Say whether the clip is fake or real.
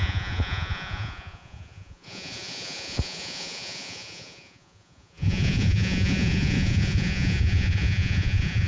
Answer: fake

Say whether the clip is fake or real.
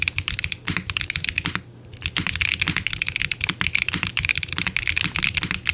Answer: real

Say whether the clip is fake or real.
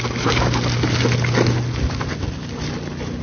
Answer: real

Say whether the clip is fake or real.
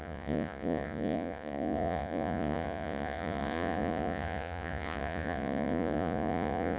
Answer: fake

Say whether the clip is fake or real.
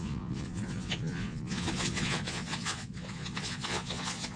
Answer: fake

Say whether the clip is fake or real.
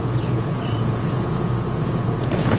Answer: fake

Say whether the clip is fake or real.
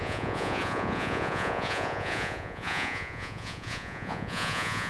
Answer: fake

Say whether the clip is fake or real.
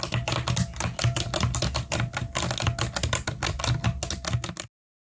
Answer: real